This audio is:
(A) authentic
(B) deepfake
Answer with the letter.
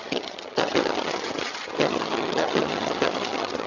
B